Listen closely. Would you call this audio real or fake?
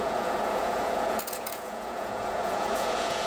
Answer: fake